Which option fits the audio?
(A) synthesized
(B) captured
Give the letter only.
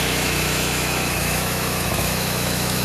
A